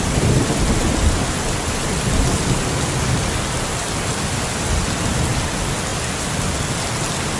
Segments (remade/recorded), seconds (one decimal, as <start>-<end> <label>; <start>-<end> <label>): 0.0-7.4 recorded